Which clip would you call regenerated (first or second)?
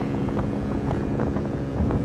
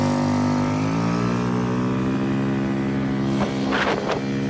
first